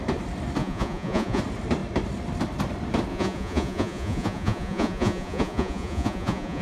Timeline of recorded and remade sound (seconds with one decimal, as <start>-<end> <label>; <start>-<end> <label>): 0.0-0.6 recorded; 0.6-1.4 remade; 1.4-3.1 recorded; 3.1-6.6 remade